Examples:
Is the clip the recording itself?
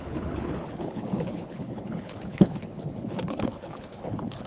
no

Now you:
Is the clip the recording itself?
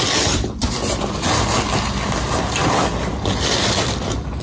yes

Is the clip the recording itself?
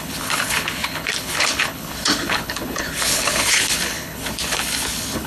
no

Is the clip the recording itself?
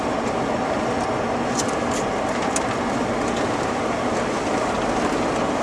yes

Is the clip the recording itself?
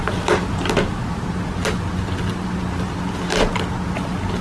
yes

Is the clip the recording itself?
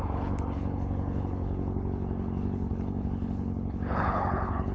no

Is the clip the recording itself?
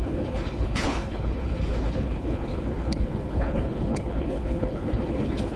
no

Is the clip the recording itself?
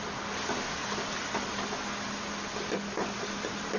yes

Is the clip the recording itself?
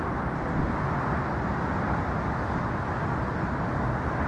yes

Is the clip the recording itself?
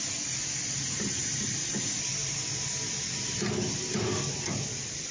yes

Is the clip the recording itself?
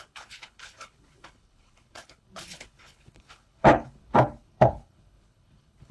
no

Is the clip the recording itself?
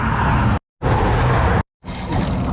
yes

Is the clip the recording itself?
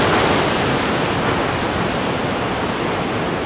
yes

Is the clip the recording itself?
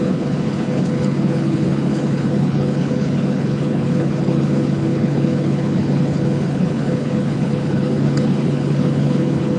no